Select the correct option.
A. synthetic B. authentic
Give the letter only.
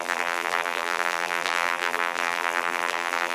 A